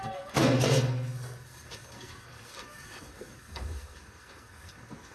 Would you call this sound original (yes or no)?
no